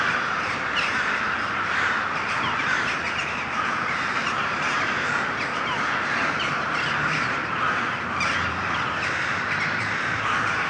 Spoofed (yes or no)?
yes